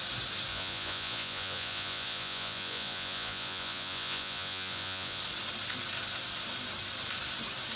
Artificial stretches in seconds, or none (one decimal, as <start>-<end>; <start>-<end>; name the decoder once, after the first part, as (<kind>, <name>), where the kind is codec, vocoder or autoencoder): 0.5-5.2 (vocoder, Vocos)